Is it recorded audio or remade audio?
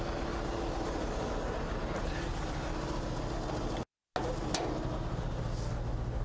recorded